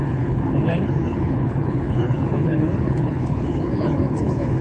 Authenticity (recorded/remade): remade